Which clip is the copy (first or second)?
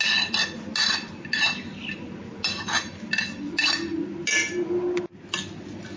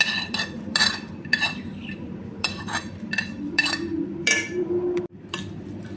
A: second